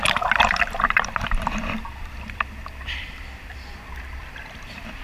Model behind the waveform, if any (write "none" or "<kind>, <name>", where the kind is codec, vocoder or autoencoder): vocoder, BigVGAN v2